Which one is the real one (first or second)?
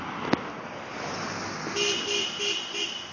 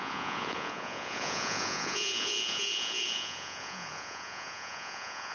first